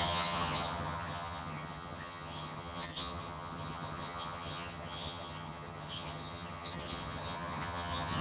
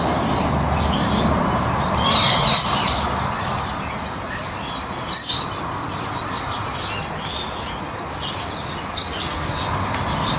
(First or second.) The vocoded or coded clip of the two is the first